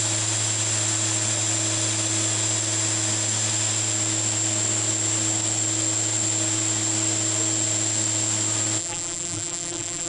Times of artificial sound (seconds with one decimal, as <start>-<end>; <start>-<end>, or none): 8.8-10.1